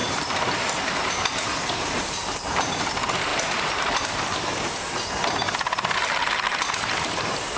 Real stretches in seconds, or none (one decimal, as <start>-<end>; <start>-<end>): 2.9-3.3; 4.0-6.5